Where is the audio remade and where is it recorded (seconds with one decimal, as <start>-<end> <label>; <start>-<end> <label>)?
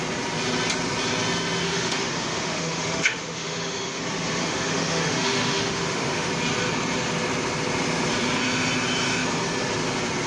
0.0-1.6 recorded; 1.6-4.0 remade; 4.0-4.4 recorded; 4.4-6.3 remade; 6.3-10.3 recorded